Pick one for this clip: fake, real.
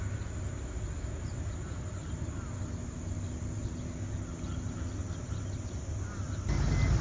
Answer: real